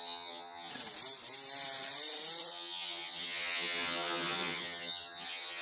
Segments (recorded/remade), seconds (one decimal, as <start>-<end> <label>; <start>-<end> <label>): 0.0-0.7 remade; 0.7-2.5 recorded; 2.5-5.6 remade